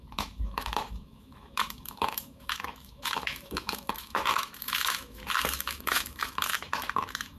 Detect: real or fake fake